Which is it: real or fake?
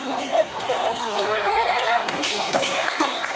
fake